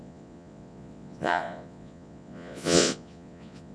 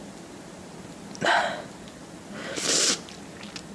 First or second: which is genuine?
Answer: second